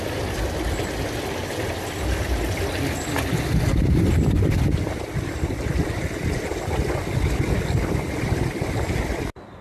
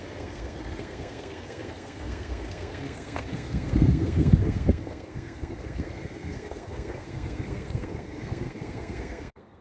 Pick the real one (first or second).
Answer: first